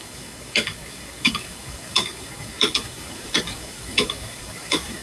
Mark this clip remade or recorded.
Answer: remade